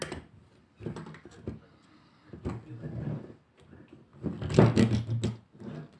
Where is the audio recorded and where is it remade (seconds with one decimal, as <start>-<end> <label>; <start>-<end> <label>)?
0.0-6.0 recorded